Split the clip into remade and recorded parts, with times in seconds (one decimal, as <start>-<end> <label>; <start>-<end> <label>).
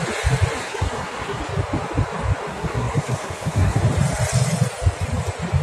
0.0-0.6 recorded; 0.6-1.4 remade; 1.4-2.5 recorded; 2.5-3.8 remade; 3.8-5.6 recorded